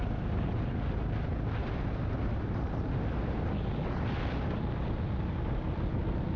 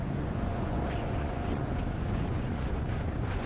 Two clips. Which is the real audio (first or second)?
first